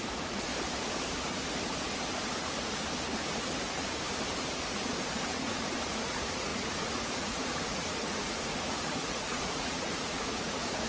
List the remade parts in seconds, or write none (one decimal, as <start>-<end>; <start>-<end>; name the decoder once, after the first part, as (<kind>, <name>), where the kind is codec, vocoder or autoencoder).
0.0-0.5 (vocoder, Vocos); 5.2-10.9